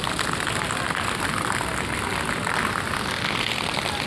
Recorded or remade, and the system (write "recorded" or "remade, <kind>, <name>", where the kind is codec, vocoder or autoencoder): recorded